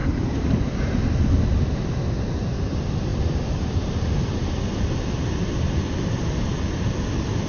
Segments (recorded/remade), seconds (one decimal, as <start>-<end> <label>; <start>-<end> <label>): 0.0-7.5 recorded